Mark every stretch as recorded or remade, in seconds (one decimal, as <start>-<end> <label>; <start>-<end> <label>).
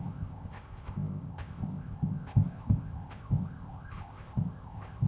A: 0.0-5.1 remade